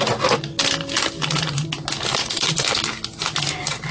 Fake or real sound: real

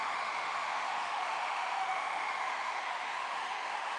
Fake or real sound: fake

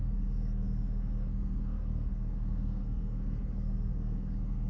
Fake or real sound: fake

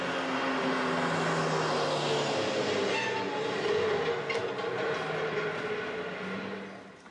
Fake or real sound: real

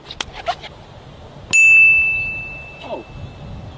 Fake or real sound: real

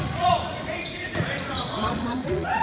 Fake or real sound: fake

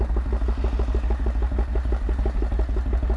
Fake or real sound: real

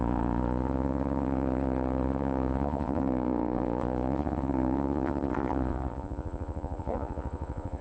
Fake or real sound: fake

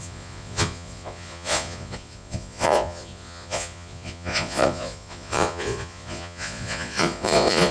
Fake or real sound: fake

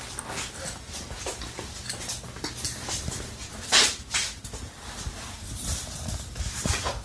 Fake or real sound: real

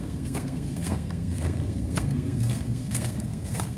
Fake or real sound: fake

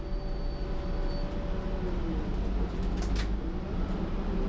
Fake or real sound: real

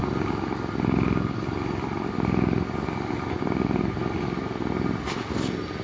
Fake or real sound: real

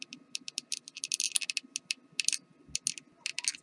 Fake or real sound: real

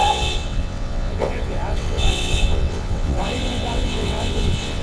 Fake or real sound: fake